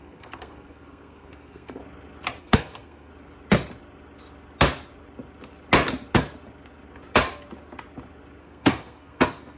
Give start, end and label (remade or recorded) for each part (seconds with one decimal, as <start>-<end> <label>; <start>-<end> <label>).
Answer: 0.0-1.8 remade; 1.8-2.4 recorded; 2.4-3.1 remade; 3.1-8.4 recorded; 8.4-9.6 remade